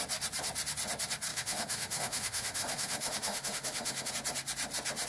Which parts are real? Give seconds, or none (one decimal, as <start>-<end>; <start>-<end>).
0.0-1.3; 4.1-5.1